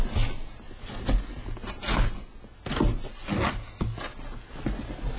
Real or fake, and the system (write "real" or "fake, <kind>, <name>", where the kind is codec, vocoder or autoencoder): real